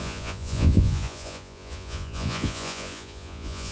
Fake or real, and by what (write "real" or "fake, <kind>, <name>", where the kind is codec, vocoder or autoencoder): fake, vocoder, Vocos